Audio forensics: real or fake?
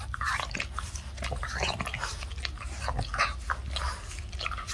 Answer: real